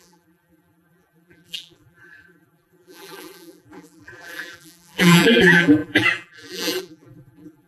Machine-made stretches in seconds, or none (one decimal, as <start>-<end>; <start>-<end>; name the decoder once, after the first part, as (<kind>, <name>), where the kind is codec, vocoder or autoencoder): 0.0-7.7 (vocoder, BigVGAN v2)